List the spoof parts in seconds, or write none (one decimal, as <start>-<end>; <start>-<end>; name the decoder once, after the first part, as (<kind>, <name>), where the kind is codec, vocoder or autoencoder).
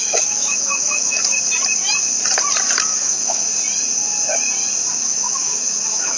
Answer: 0.0-1.2 (autoencoder, DAC-VAE); 2.9-3.5; 5.0-6.2